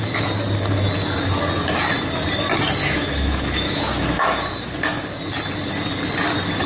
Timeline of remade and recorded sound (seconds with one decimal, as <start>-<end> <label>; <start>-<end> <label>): 0.0-2.8 recorded; 2.8-4.7 remade; 4.7-6.7 recorded